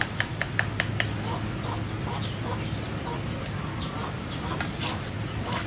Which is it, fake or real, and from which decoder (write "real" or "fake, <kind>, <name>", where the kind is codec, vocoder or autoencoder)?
real